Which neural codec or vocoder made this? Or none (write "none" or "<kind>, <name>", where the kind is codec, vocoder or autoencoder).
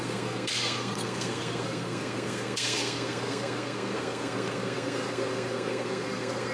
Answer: codec, SNAC